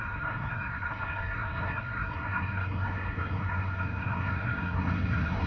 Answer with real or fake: fake